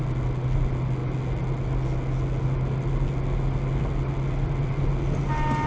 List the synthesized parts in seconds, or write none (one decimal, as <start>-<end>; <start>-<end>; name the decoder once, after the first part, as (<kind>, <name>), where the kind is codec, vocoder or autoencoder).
none